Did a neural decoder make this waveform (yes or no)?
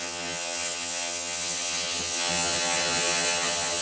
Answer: yes